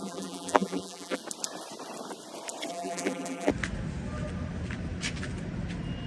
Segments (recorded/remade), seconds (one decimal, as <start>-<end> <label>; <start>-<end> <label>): 0.0-1.2 remade; 1.2-2.7 recorded; 2.7-3.5 remade; 3.5-6.1 recorded